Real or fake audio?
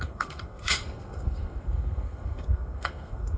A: fake